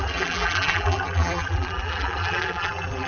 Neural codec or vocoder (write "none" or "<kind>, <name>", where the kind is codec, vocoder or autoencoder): vocoder, BigVGAN v2